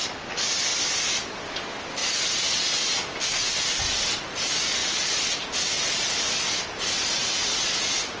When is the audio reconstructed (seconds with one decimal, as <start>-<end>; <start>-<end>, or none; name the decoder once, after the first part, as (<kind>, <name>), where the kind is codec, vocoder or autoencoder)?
none